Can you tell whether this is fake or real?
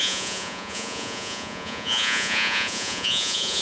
fake